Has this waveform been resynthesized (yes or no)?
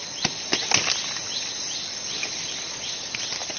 no